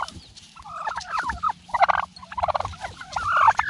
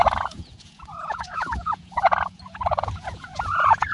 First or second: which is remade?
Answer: second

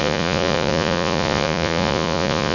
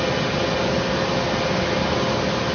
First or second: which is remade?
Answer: first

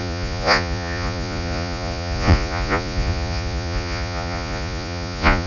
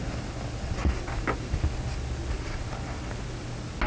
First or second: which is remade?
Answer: first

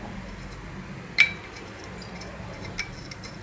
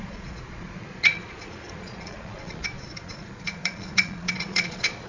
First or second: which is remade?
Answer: second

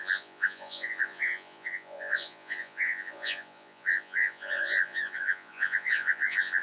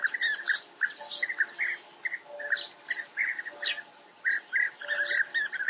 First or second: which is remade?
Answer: first